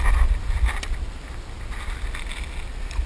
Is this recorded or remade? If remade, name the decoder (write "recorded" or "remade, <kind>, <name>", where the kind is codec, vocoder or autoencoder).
recorded